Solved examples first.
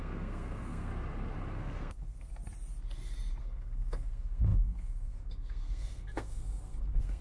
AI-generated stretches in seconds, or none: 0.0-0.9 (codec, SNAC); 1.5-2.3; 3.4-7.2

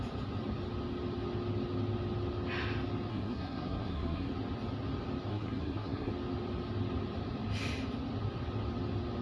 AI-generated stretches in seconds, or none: 3.1-4.3 (codec, SNAC); 5.3-6.1